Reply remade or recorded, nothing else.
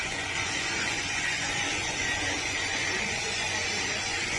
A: remade